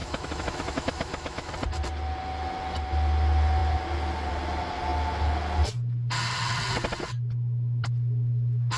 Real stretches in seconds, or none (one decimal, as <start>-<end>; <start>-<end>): 1.5-8.8